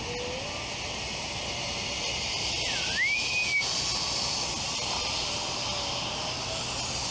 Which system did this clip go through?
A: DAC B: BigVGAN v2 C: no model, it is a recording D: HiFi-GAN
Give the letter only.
C